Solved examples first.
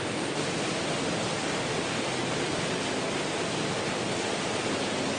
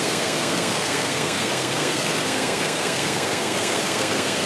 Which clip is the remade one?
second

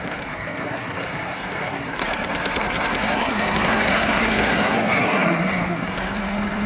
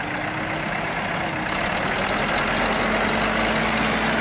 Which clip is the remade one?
first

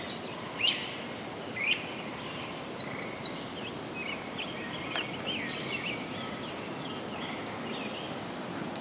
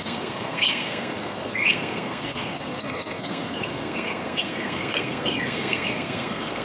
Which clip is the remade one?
second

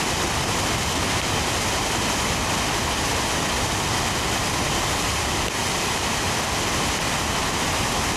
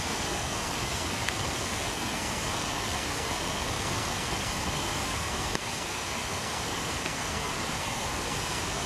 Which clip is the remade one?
second